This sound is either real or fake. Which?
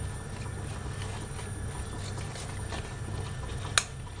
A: real